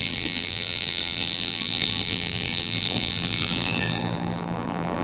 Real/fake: fake